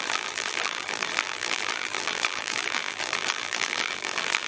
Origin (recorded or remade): remade